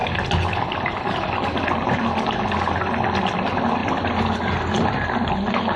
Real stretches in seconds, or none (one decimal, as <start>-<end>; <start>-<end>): 0.0-5.8